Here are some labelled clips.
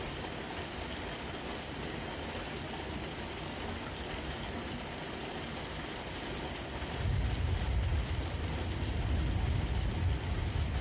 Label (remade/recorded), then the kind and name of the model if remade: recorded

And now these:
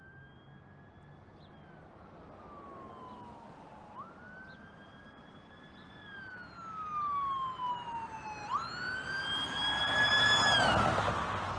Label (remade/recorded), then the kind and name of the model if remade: recorded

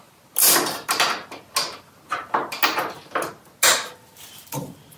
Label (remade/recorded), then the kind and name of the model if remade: recorded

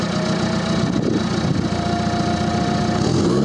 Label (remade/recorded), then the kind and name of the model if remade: recorded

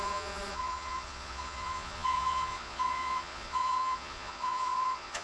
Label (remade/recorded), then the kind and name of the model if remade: remade, vocoder, Vocos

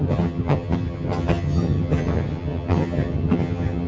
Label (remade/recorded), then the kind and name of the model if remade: remade, vocoder, HiFi-GAN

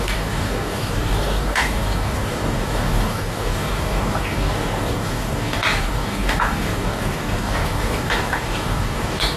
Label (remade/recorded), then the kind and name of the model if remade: remade, codec, DAC